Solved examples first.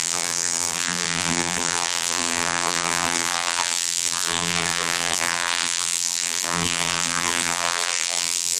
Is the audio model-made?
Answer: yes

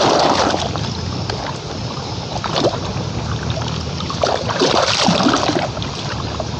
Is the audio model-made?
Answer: no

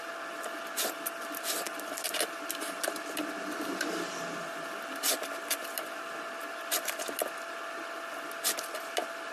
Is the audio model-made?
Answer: no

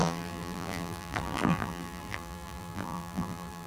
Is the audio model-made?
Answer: yes